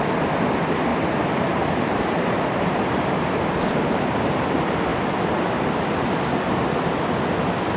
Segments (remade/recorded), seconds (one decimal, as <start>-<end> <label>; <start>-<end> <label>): 0.0-0.9 recorded; 0.9-4.3 remade; 4.3-4.9 recorded; 4.9-5.5 remade; 5.5-7.8 recorded

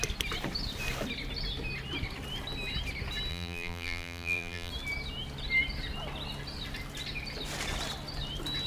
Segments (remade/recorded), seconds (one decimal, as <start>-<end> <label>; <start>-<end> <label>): 0.0-3.3 recorded; 3.3-4.7 remade; 4.7-8.7 recorded

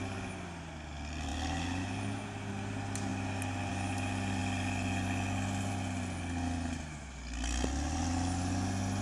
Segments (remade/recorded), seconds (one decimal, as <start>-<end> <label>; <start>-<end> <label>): 0.0-9.0 recorded

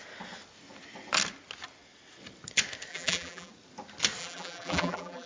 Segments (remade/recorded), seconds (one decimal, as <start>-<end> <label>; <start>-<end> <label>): 0.0-2.9 recorded; 2.9-3.5 remade; 3.5-4.2 recorded; 4.2-5.3 remade

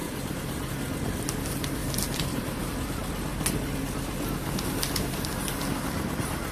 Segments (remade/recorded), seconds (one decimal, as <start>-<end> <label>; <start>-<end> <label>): 0.0-0.7 remade; 0.7-1.8 recorded; 1.8-2.7 remade; 2.7-6.5 recorded

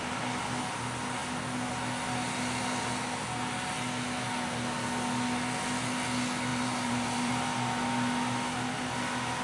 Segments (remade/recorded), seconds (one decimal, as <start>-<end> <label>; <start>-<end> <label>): 0.0-6.5 recorded; 6.5-7.3 remade; 7.3-9.4 recorded

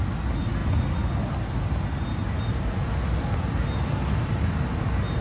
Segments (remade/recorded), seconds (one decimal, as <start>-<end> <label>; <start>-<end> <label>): 0.0-5.2 recorded